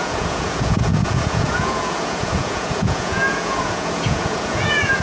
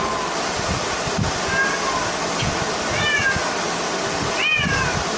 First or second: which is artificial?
first